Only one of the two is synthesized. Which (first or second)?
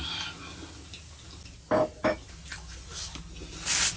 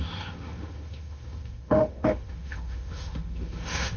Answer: second